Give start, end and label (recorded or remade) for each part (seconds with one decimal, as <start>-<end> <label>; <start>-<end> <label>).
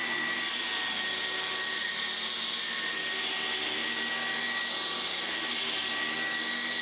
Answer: 0.0-6.8 recorded